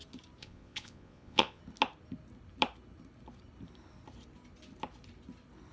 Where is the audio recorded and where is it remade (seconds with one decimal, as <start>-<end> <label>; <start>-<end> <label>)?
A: 0.0-0.4 recorded; 0.4-1.6 remade; 1.6-5.7 recorded